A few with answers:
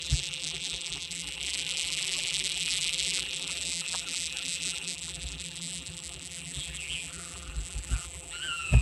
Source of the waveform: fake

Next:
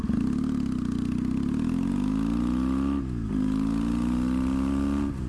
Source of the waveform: real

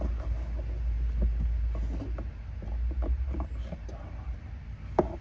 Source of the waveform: real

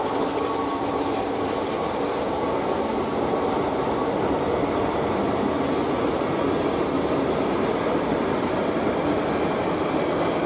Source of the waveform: real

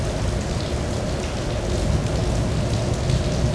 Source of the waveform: real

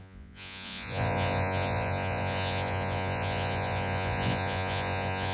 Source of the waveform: fake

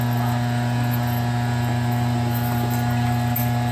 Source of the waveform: real